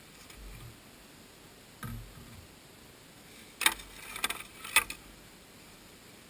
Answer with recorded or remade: recorded